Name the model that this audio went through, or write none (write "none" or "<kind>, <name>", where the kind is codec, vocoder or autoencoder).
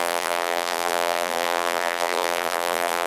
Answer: vocoder, BigVGAN v2